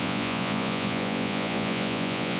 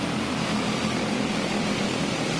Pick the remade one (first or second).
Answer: first